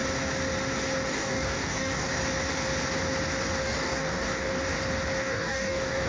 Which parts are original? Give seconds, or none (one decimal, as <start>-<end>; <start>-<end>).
0.0-1.1; 2.1-3.6; 4.6-5.2